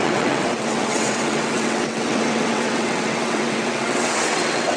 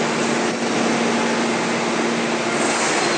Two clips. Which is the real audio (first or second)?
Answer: second